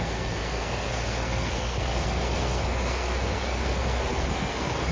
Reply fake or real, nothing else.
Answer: fake